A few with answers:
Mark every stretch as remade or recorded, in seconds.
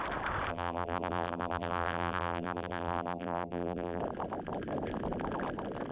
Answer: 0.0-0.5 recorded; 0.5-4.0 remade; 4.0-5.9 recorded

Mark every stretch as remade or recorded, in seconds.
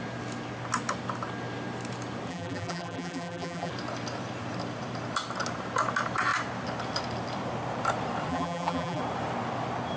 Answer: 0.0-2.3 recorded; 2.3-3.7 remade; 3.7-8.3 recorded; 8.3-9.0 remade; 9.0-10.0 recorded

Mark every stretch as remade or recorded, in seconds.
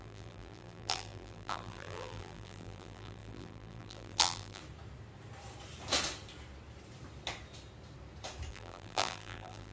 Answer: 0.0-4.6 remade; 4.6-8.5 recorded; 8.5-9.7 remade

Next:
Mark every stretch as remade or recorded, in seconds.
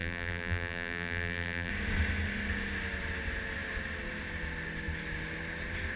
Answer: 0.0-1.7 remade; 1.7-6.0 recorded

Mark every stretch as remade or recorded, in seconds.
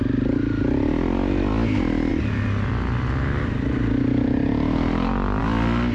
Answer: 0.0-5.9 recorded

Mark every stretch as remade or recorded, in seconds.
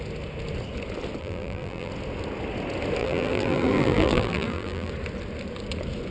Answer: 0.0-1.2 recorded; 1.2-1.9 remade; 1.9-3.0 recorded; 3.0-4.9 remade; 4.9-6.1 recorded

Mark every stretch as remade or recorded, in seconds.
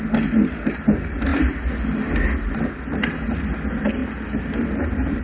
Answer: 0.0-5.2 recorded